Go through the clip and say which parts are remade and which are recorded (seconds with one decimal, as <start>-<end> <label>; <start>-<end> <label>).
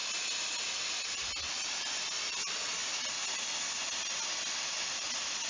0.0-5.5 recorded